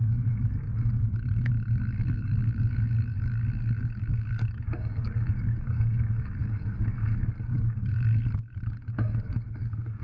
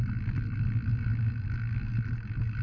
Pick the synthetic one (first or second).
first